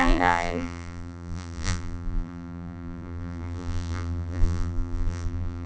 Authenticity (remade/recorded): remade